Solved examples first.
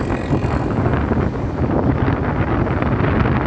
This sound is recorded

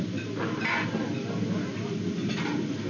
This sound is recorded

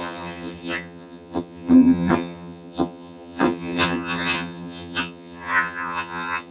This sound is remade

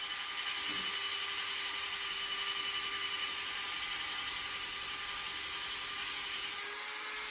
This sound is recorded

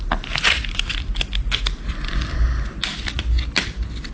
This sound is recorded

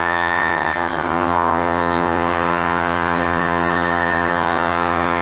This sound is remade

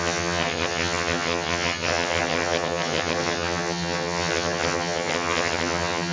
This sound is remade